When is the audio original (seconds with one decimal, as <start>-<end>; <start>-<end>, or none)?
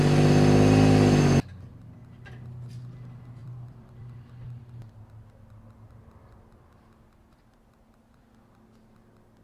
0.0-3.4; 4.6-9.4